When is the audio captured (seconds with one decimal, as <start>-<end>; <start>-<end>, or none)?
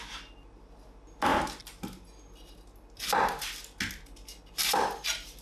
0.0-5.4